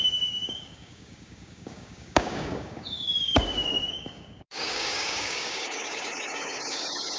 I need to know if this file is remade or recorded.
remade